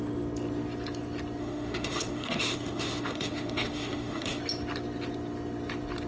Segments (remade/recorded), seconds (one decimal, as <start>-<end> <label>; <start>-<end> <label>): 0.0-1.4 recorded; 1.4-4.4 remade; 4.4-6.1 recorded